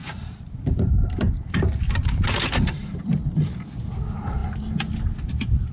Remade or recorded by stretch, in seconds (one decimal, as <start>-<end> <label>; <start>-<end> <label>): 0.0-3.4 remade; 3.4-5.7 recorded